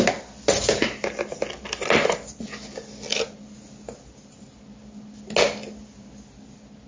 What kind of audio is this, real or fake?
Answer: real